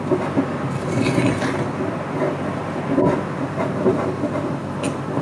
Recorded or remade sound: recorded